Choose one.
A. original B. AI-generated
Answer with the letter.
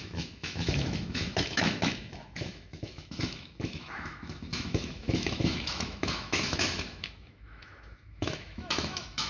B